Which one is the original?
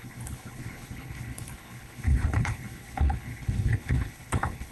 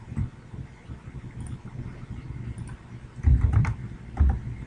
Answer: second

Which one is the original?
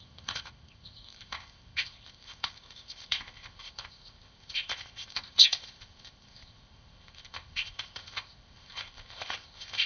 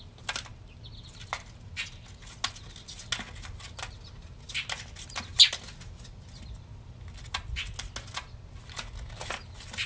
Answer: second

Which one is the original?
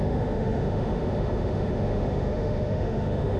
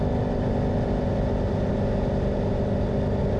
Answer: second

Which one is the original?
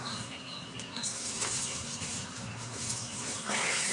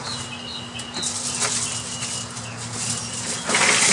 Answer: second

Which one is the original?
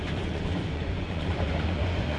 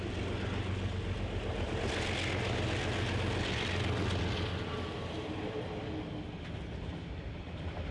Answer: second